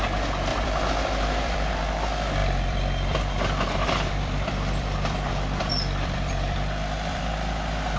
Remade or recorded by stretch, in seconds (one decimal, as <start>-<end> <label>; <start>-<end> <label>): 0.0-0.5 recorded; 0.5-1.7 remade; 1.7-2.4 recorded; 2.4-7.2 remade; 7.2-8.0 recorded